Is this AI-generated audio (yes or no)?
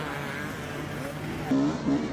no